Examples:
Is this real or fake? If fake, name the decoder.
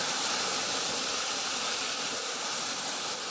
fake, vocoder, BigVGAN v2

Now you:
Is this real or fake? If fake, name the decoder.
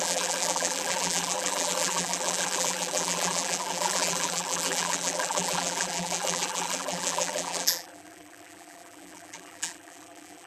fake, vocoder, BigVGAN v2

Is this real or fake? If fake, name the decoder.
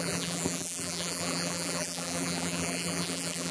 fake, vocoder, BigVGAN v2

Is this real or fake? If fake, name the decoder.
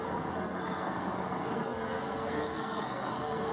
fake, codec, SNAC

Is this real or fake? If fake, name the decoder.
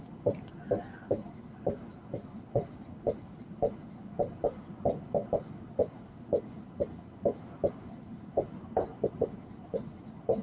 real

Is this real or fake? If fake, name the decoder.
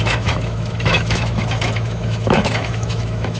fake, autoencoder, DAC-VAE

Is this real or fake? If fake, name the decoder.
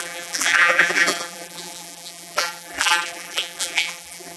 fake, vocoder, BigVGAN v2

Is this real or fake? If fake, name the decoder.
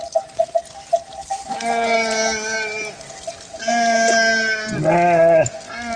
real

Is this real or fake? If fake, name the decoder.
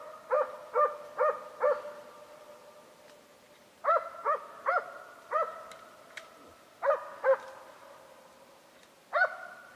real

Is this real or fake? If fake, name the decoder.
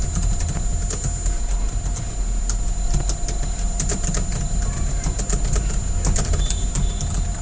real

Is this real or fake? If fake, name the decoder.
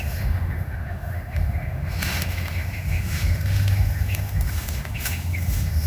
fake, autoencoder, DAC-VAE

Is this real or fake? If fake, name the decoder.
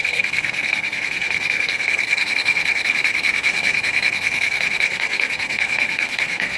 fake, codec, SNAC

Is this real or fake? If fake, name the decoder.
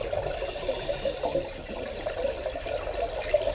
real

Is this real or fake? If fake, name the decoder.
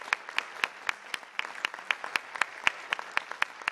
real